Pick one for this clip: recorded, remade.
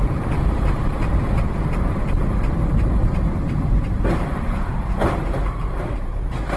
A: remade